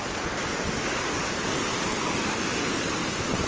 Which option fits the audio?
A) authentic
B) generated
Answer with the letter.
A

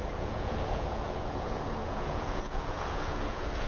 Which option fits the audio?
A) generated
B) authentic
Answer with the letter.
A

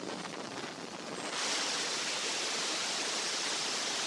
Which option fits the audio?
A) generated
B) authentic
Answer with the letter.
B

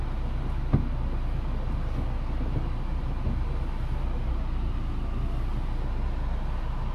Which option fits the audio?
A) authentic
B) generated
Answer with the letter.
A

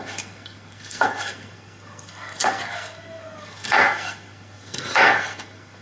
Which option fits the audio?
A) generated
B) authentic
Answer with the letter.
A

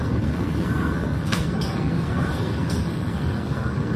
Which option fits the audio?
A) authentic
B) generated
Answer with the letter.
B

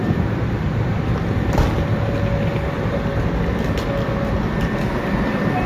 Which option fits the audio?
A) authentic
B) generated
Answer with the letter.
A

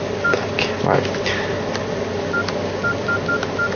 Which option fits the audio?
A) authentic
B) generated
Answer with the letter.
A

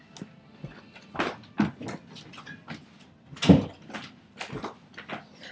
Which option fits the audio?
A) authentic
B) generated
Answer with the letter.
A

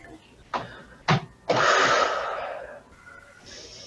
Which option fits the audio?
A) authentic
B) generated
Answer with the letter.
A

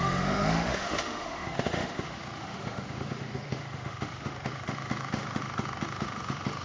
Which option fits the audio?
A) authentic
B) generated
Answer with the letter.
B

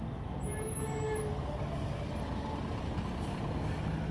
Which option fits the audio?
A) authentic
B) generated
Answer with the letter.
A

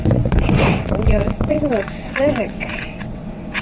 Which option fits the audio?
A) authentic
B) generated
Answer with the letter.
B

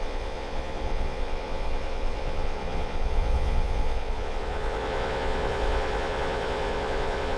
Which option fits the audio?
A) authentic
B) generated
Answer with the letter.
B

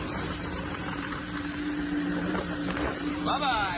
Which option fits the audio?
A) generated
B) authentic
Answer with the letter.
A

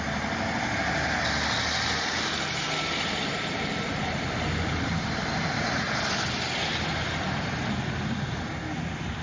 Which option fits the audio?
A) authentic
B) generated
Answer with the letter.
A